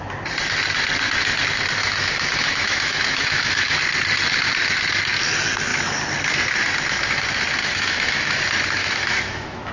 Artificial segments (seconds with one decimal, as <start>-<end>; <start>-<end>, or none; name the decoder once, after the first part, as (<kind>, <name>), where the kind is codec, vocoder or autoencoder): 1.8-3.8 (autoencoder, DAC-VAE); 7.6-8.4; 8.8-9.7